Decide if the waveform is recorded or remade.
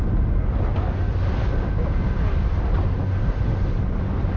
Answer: recorded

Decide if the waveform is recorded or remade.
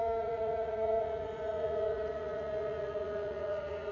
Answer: remade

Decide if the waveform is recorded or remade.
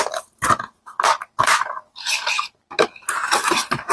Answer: recorded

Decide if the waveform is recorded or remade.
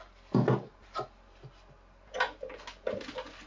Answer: recorded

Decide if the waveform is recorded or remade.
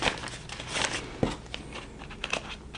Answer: recorded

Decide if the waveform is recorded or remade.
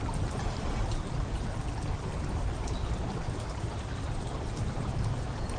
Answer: recorded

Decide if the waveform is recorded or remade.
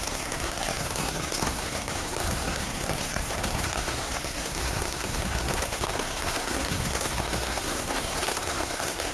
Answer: remade